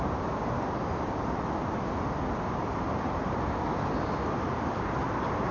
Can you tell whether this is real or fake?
real